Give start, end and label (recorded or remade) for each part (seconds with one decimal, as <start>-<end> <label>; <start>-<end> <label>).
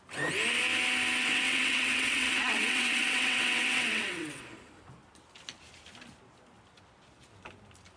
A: 0.0-1.2 recorded; 1.2-4.4 remade; 4.4-8.0 recorded